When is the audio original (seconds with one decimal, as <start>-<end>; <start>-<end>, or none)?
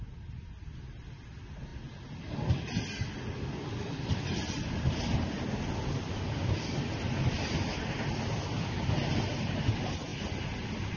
0.0-11.0